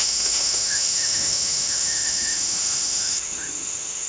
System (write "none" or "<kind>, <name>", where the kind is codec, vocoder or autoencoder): autoencoder, DAC-VAE